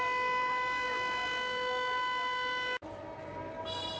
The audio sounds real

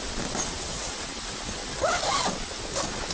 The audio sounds real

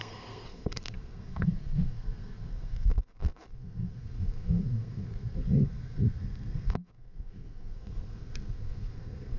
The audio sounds fake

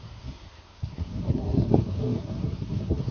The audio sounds fake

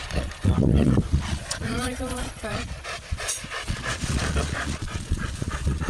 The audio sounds fake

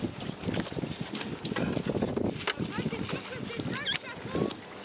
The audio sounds real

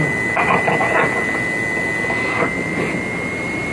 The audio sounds real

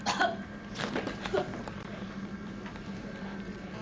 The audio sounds real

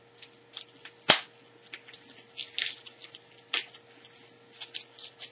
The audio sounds real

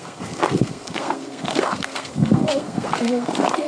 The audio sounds fake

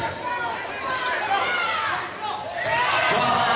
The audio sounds real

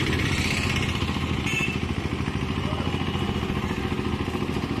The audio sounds real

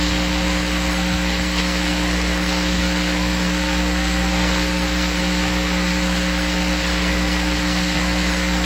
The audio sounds fake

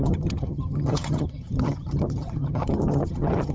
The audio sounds fake